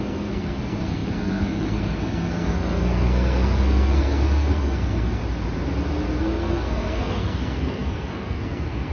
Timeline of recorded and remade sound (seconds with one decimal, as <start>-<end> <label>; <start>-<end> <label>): 0.0-5.2 remade; 5.2-6.2 recorded; 6.2-8.9 remade